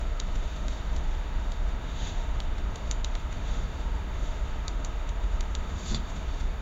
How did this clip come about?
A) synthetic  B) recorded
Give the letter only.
A